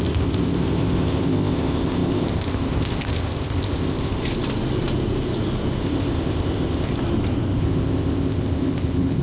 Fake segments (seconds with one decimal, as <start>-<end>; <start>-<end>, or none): 0.0-4.2; 5.8-6.9; 7.6-9.2